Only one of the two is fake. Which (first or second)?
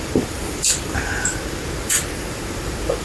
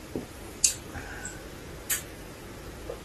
first